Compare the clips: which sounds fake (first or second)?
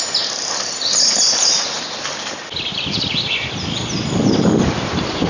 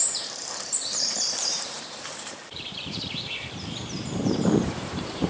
second